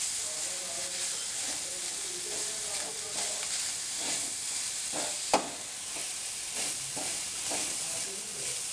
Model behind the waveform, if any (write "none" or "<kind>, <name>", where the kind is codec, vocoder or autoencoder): none